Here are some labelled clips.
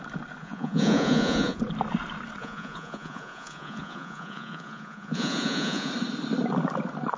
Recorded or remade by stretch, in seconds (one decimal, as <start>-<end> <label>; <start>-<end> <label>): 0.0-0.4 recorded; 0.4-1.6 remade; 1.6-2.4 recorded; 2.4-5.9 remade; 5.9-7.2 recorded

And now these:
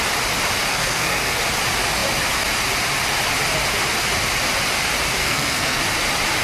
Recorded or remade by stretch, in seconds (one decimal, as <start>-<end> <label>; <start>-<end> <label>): 0.0-0.7 recorded; 0.7-1.4 remade; 1.4-5.2 recorded; 5.2-5.8 remade; 5.8-6.4 recorded

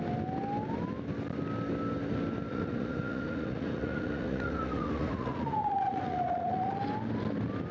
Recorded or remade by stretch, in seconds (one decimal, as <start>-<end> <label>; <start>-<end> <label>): 0.0-2.5 recorded; 2.5-6.7 remade; 6.7-7.7 recorded